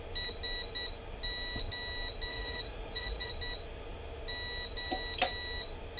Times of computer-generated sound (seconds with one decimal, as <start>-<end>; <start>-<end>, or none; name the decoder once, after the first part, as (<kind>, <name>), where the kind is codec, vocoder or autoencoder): 2.3-3.3 (vocoder, Vocos)